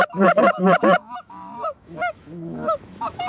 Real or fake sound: fake